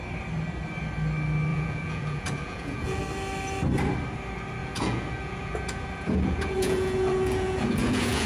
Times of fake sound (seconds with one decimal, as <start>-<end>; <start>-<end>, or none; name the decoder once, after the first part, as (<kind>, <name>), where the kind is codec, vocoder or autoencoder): 1.5-3.0 (vocoder, Vocos); 4.6-8.3

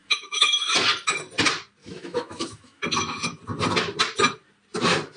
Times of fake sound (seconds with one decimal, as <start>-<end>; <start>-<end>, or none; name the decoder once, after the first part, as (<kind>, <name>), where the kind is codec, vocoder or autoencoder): 0.0-0.7 (autoencoder, DAC-VAE); 1.8-2.8

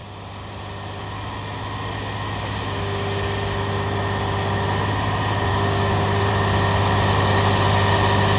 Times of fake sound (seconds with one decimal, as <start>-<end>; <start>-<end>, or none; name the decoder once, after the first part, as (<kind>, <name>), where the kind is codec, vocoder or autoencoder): 5.5-6.3 (codec, DAC)

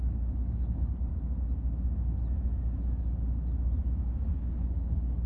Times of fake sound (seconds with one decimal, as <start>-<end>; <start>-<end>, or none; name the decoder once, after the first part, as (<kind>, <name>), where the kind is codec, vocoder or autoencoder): 0.0-1.1 (codec, HILCodec); 4.3-5.3